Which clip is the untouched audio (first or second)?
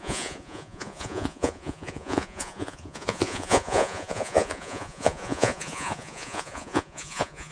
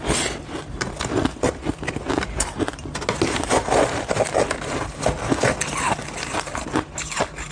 second